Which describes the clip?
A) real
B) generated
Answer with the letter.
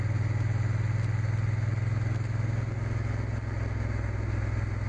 A